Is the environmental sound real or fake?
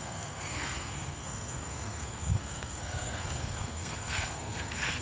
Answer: fake